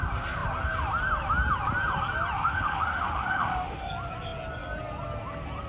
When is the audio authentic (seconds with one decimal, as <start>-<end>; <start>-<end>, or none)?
0.0-2.4; 3.9-5.7